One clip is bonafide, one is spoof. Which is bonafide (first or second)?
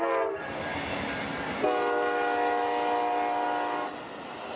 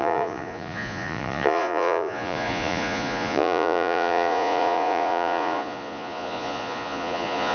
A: first